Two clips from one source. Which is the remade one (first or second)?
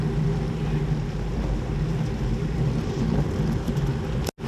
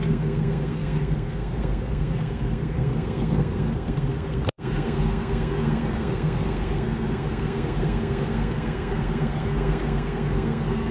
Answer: second